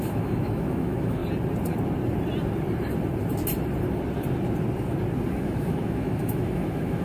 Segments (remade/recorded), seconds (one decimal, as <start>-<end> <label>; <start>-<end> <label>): 0.0-1.2 remade; 1.2-5.3 recorded; 5.3-7.0 remade